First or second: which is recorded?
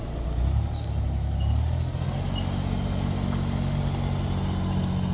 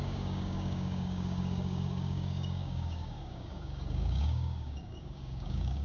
first